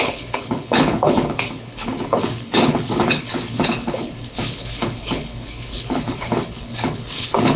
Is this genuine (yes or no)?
no